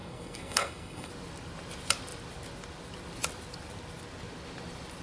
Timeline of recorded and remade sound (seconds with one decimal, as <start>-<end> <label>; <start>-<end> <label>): 0.0-1.1 remade; 1.1-5.0 recorded